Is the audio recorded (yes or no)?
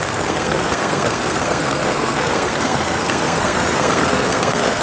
no